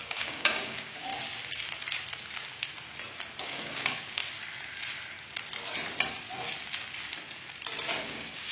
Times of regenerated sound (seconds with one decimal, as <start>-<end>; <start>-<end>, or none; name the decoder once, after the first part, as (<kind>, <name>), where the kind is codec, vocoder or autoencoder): 0.0-1.1 (codec, DAC); 3.4-4.2; 8.0-8.5

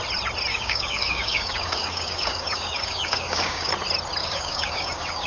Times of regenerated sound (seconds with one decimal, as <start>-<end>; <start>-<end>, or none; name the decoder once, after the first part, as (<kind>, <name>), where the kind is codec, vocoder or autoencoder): 0.5-3.7 (codec, DAC); 4.2-5.3

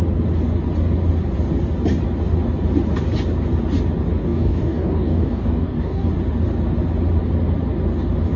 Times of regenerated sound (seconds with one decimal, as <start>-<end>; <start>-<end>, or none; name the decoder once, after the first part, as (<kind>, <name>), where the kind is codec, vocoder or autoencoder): 4.2-6.1 (codec, DAC)

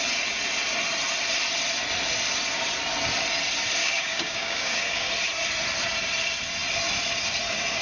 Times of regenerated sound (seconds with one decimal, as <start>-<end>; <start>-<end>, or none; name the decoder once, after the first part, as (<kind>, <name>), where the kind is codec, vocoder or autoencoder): 3.8-5.1 (codec, DAC)

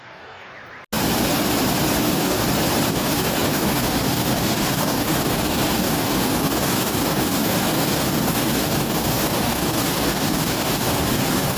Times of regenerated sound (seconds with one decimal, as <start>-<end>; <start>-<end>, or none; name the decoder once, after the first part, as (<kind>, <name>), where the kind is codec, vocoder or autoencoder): 0.0-0.5 (codec, DAC); 2.0-2.4; 2.9-11.6

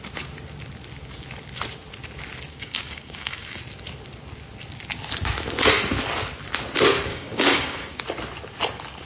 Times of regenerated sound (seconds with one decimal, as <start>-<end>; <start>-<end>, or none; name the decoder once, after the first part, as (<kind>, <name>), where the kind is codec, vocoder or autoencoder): 2.5-3.6 (codec, DAC); 7.1-8.0

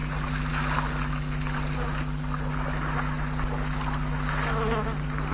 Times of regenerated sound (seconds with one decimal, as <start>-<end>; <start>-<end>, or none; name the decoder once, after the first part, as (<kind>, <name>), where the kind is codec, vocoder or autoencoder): none